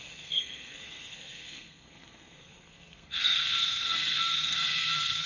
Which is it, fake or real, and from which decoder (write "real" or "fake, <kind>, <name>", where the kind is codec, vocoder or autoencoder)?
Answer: fake, codec, SNAC